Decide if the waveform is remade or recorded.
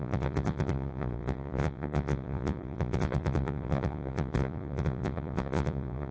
remade